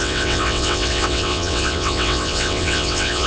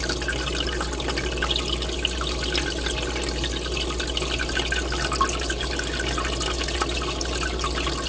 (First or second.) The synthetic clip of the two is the first